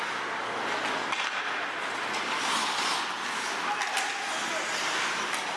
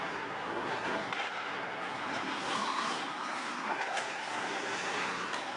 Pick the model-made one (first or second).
second